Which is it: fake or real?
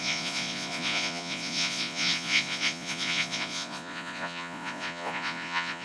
fake